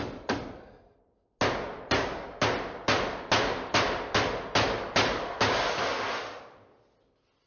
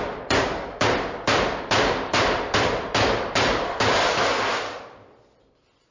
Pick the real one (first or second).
first